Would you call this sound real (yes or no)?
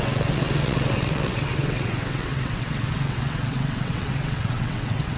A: no